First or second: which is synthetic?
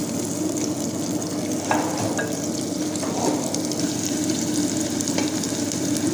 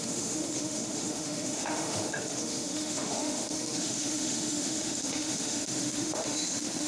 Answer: second